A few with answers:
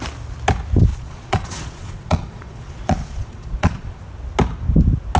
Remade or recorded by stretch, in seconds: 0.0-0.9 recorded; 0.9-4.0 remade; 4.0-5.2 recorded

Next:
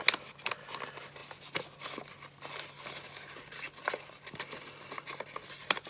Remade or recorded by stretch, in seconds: 0.0-5.9 recorded

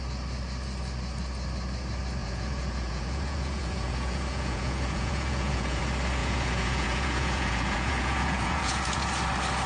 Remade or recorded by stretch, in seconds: 0.0-2.2 recorded; 2.2-5.8 remade; 5.8-6.2 recorded; 6.2-9.1 remade; 9.1-9.7 recorded

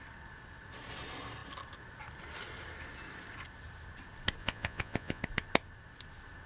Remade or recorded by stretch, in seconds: 0.0-4.4 recorded; 4.4-5.2 remade; 5.2-6.5 recorded